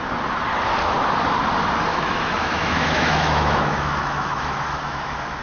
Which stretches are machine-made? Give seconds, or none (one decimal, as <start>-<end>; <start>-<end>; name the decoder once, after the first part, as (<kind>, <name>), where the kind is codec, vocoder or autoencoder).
1.9-5.4 (autoencoder, DAC-VAE)